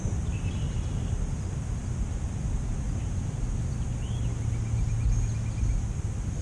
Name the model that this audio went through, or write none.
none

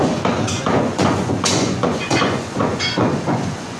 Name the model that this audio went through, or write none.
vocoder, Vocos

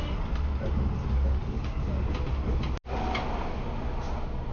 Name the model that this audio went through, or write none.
none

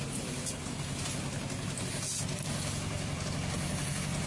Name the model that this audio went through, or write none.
none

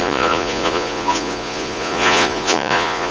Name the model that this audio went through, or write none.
vocoder, Vocos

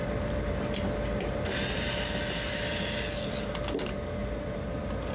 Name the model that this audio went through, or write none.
none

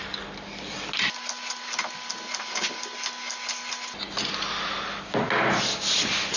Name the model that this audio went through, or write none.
none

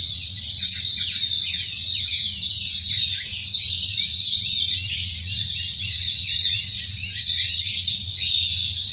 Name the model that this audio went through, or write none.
vocoder, Vocos